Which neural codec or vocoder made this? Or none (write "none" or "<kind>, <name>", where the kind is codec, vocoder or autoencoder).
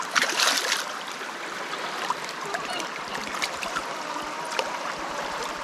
vocoder, BigVGAN v2